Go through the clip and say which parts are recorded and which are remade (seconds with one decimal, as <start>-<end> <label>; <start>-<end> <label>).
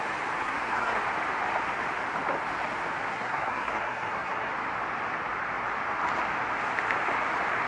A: 0.0-0.4 recorded; 0.4-1.0 remade; 1.0-3.1 recorded; 3.1-4.5 remade; 4.5-7.7 recorded